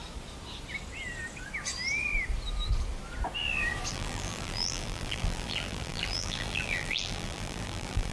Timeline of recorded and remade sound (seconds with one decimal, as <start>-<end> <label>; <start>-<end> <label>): 0.0-3.9 recorded; 3.9-8.1 remade